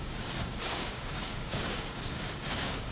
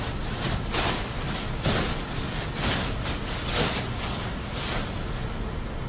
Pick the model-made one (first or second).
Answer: first